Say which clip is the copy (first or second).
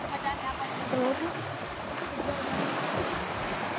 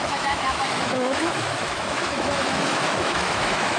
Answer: second